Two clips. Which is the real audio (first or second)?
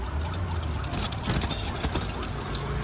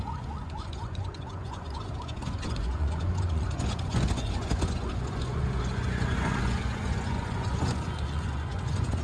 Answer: first